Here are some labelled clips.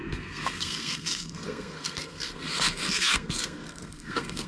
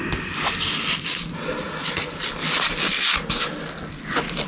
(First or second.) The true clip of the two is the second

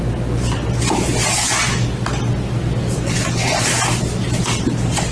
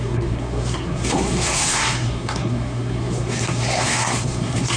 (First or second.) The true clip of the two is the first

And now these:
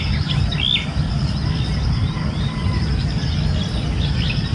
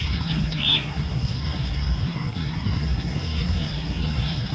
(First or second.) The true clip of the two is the first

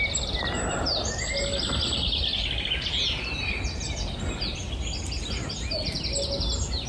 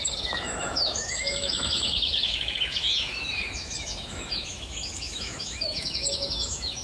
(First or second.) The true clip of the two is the first